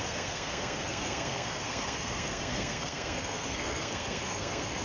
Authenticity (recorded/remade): remade